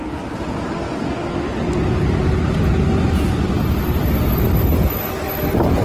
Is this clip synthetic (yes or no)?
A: no